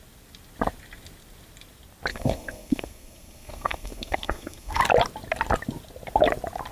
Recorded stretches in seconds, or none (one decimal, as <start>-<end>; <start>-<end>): 0.0-2.1; 4.8-6.7